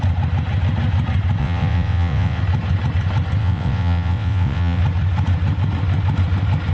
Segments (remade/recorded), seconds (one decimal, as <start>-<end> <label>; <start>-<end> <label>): 0.0-1.4 recorded; 1.4-2.4 remade; 2.4-3.4 recorded; 3.4-4.8 remade; 4.8-6.7 recorded